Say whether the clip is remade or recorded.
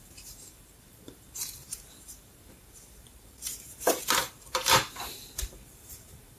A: remade